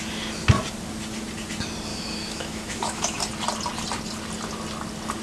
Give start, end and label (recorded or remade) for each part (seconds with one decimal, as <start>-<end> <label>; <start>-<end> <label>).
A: 0.0-1.9 recorded; 1.9-3.2 remade; 3.2-5.2 recorded